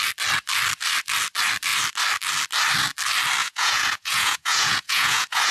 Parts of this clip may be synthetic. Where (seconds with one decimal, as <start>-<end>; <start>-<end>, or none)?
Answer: 3.4-5.5